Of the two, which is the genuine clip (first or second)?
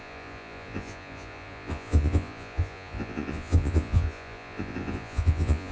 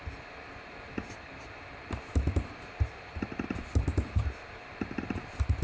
second